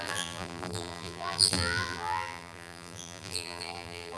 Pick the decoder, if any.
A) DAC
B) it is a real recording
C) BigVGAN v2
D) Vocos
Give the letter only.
C